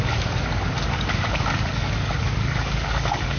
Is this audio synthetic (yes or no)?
yes